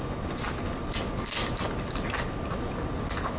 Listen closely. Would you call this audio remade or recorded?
recorded